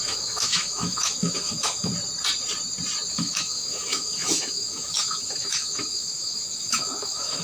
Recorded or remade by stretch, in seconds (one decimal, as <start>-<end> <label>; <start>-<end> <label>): 0.0-1.9 remade; 1.9-3.1 recorded; 3.1-7.4 remade